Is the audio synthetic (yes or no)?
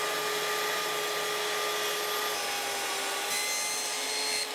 no